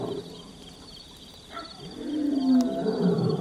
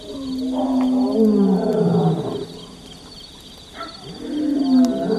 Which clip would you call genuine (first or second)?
second